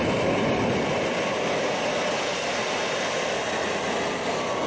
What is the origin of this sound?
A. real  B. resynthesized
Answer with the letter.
A